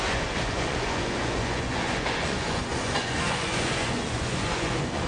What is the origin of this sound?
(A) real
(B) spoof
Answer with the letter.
B